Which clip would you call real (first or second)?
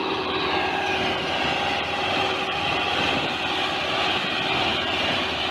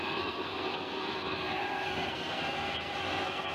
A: first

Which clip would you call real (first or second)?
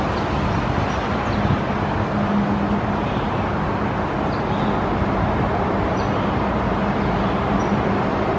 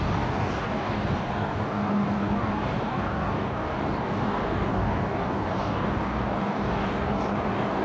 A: first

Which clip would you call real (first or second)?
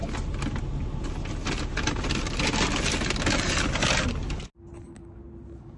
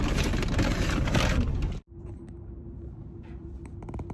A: first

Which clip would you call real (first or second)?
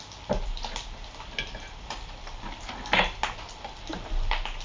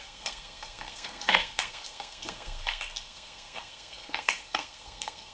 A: first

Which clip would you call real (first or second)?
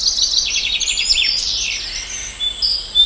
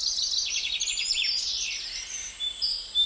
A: first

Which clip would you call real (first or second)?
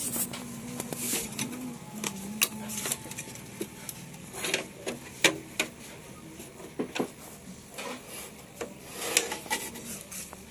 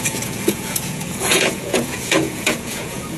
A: first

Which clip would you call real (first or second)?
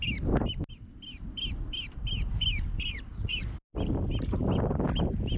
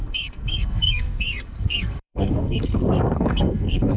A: first